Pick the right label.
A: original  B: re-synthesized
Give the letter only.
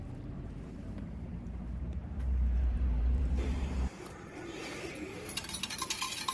B